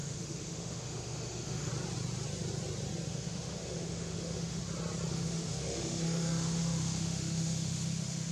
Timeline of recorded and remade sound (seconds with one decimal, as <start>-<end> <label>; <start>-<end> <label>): 0.0-1.7 remade; 1.7-3.1 recorded; 3.1-4.6 remade; 4.6-5.1 recorded; 5.1-8.3 remade